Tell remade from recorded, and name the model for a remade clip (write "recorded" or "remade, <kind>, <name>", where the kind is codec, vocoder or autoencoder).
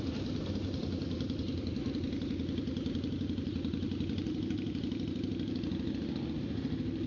recorded